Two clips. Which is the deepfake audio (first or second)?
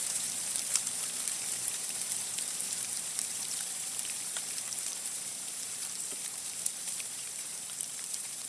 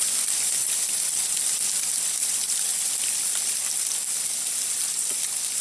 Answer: first